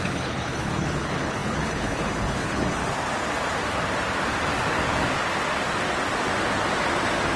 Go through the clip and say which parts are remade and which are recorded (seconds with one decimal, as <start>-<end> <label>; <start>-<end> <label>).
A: 0.0-2.8 remade; 2.8-7.4 recorded